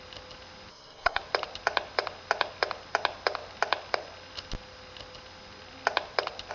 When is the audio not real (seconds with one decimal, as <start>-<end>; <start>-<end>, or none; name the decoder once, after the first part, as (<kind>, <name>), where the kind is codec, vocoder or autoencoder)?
0.7-1.2 (codec, SNAC)